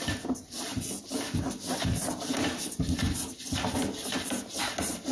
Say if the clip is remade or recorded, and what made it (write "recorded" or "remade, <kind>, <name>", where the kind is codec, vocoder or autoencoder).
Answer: recorded